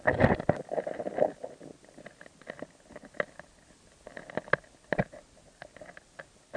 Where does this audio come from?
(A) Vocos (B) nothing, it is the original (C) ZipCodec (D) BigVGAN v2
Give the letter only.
B